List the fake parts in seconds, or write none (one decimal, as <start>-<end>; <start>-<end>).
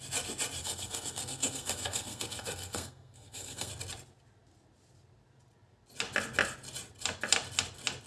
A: 0.6-3.7